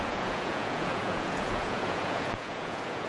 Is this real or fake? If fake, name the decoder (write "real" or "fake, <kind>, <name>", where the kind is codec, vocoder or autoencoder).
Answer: fake, vocoder, Vocos